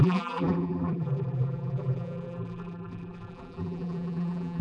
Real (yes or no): no